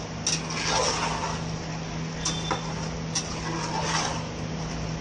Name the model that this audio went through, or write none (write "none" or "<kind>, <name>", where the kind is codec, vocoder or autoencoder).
none